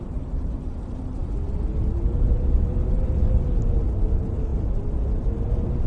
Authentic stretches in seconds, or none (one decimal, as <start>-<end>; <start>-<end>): 0.0-5.9